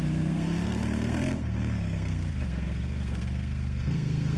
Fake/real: fake